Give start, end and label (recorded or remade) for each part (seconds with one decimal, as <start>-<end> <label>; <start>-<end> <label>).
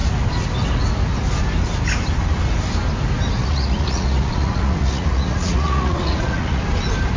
0.0-3.4 recorded; 3.4-6.6 remade; 6.6-7.2 recorded